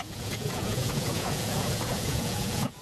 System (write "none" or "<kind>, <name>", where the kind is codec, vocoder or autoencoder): vocoder, Vocos